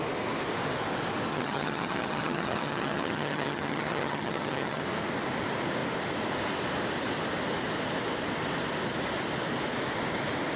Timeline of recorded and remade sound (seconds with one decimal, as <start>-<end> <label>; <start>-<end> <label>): 0.0-1.3 recorded; 1.3-4.8 remade; 4.8-10.6 recorded